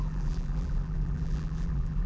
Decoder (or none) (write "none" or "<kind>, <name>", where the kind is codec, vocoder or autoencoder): vocoder, BigVGAN v2